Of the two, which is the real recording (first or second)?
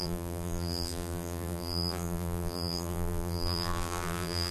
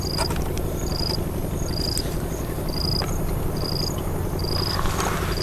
second